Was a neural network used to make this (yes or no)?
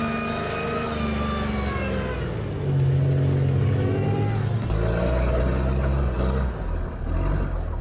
no